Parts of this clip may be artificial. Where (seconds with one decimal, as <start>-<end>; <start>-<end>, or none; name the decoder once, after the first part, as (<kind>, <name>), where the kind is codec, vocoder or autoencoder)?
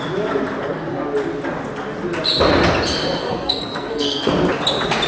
3.2-4.3 (codec, SNAC)